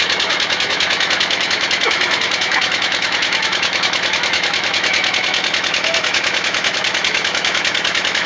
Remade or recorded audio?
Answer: remade